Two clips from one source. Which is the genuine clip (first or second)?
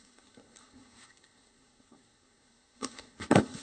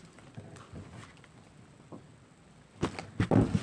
second